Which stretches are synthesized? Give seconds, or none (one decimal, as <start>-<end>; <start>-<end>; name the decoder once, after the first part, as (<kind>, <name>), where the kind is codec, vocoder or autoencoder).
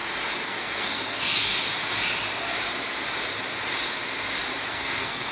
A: 0.5-1.5 (codec, SNAC); 4.7-5.3